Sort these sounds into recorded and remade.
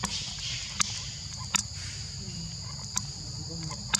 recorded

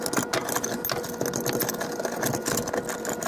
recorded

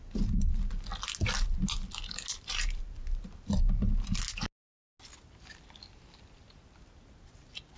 recorded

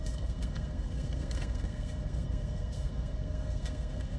remade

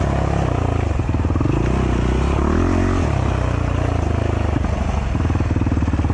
recorded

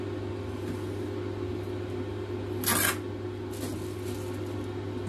recorded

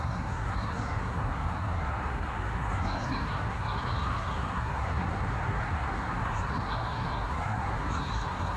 remade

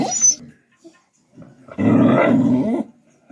recorded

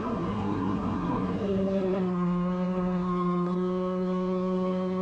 remade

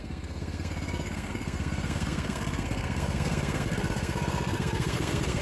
remade